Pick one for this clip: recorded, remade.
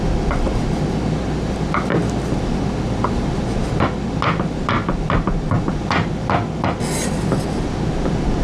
recorded